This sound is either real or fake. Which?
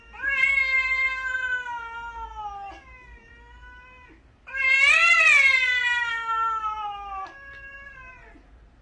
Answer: real